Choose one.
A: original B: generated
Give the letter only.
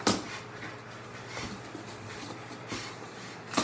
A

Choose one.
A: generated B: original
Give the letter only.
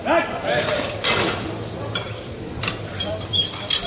A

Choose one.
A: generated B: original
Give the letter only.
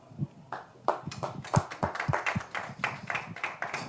A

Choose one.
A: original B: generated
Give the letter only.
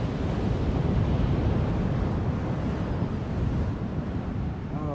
B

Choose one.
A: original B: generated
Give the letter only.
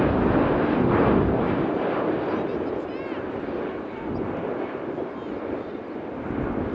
A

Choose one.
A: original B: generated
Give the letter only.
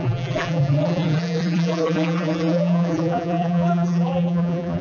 B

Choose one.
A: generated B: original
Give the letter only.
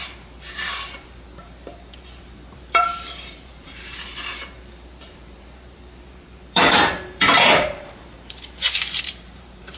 A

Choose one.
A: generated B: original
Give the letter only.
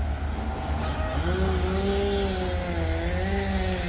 B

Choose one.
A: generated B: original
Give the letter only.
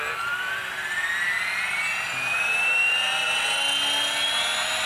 B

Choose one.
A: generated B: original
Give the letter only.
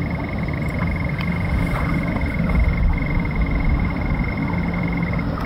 B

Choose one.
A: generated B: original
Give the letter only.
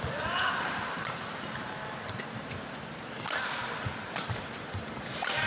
A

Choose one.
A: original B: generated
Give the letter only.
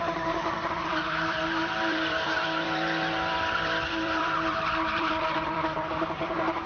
B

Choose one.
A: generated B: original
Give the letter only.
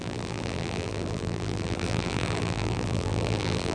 A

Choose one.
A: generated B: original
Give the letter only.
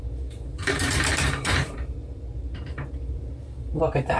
A